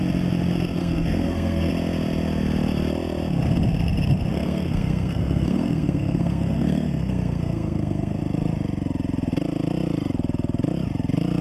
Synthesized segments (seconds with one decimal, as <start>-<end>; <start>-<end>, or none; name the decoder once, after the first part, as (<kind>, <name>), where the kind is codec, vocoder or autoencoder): 0.8-1.7 (codec, SNAC); 4.3-8.2